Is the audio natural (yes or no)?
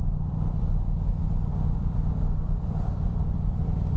no